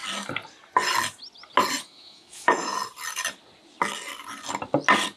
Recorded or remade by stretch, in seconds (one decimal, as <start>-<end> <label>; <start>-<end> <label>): 0.0-1.8 recorded; 1.8-2.7 remade; 2.7-5.2 recorded